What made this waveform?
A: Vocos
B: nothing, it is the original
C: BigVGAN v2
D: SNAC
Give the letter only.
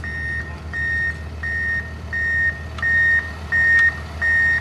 B